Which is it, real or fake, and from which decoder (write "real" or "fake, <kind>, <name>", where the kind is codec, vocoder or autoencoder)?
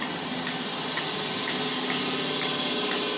real